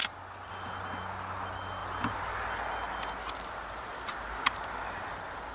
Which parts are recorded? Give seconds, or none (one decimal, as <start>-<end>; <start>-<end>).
0.0-5.5